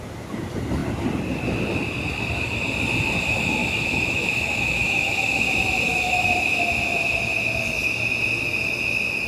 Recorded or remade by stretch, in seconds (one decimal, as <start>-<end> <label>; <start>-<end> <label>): 0.0-3.6 recorded; 3.6-5.4 remade; 5.4-5.9 recorded; 5.9-6.6 remade; 6.6-9.3 recorded